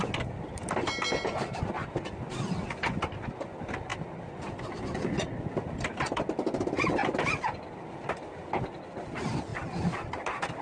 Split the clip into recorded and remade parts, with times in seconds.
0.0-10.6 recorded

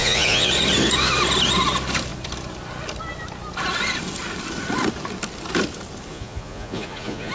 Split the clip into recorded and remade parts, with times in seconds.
0.0-0.5 remade; 0.5-6.1 recorded; 6.1-7.3 remade